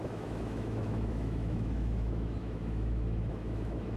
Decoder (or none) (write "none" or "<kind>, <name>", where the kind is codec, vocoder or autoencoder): autoencoder, DAC-VAE